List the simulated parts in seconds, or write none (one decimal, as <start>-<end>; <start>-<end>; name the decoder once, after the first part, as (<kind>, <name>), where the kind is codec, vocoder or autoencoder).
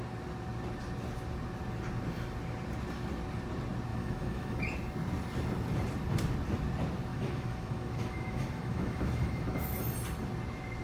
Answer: 3.9-4.6 (autoencoder, DAC-VAE); 7.1-9.8